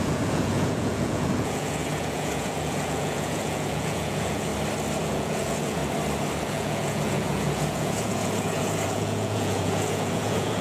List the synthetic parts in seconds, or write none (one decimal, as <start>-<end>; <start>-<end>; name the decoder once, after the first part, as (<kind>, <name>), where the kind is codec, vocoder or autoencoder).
0.0-4.5 (vocoder, Vocos); 5.0-5.8; 6.4-10.6